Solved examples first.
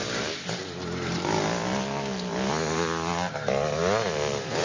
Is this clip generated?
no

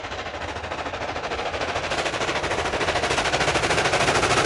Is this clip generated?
no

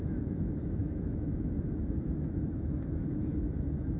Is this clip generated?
yes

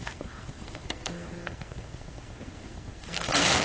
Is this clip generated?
yes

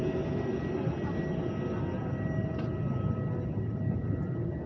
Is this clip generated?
no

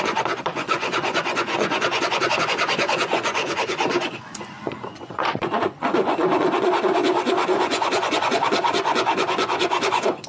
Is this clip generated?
yes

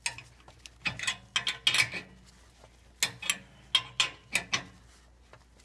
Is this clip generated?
no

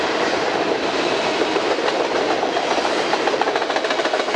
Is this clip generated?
yes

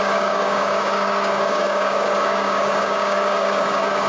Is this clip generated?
yes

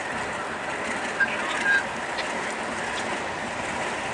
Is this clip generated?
no